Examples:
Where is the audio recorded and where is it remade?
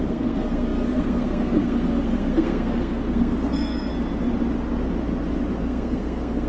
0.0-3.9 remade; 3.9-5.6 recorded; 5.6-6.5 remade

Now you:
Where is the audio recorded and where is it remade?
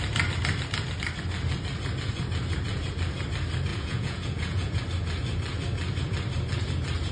0.0-3.7 recorded; 3.7-4.8 remade; 4.8-7.1 recorded